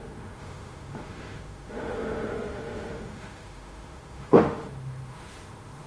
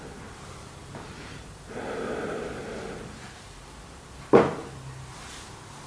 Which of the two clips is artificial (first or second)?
first